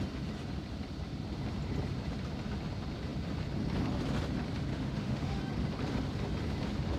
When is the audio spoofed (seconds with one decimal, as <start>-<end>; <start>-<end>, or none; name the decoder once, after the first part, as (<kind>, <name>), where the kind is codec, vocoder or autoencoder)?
4.7-5.4 (autoencoder, DAC-VAE)